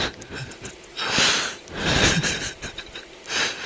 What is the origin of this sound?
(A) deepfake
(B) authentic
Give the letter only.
B